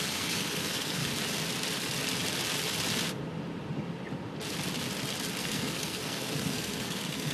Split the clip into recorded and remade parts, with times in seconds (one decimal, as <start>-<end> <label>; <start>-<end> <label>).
0.0-1.0 remade; 1.0-5.4 recorded; 5.4-7.3 remade